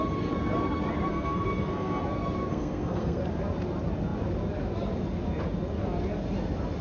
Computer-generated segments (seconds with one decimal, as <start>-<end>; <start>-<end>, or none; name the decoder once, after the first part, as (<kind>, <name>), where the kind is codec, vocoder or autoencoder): 1.1-2.0 (codec, SNAC); 2.5-3.2